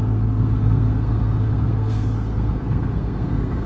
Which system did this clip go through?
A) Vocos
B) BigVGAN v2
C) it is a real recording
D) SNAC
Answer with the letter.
D